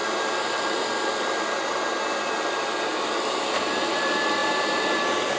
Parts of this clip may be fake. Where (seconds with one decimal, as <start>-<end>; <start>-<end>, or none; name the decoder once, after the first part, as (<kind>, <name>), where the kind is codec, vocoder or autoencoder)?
none